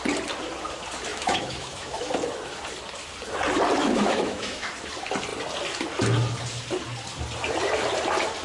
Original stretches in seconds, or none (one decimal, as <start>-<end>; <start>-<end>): 0.0-1.1; 2.0-3.8; 4.7-8.4